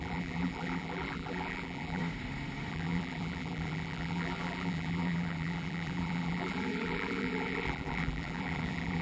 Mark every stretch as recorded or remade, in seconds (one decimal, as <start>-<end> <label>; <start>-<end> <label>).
0.0-2.0 remade; 2.0-2.7 recorded; 2.7-9.0 remade